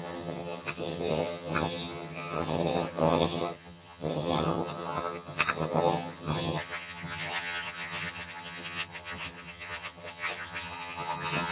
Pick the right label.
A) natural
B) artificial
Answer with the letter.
B